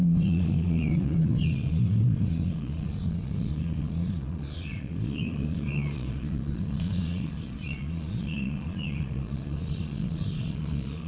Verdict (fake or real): fake